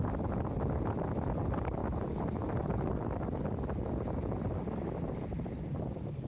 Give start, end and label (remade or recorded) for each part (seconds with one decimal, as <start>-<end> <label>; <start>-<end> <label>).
0.0-6.3 recorded